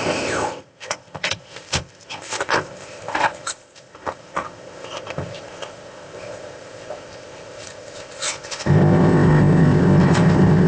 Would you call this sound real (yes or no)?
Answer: no